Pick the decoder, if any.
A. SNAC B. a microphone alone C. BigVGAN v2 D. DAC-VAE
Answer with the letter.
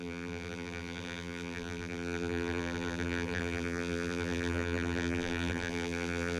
C